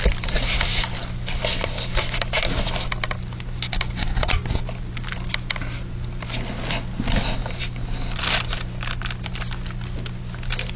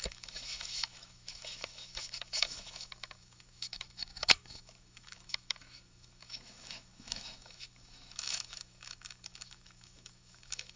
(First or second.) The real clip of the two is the first